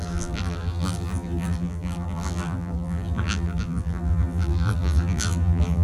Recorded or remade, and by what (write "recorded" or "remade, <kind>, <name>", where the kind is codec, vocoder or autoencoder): remade, vocoder, BigVGAN v2